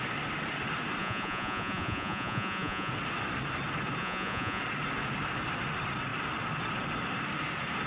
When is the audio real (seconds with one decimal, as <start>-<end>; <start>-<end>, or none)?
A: 0.0-1.0; 2.9-4.0; 4.6-7.9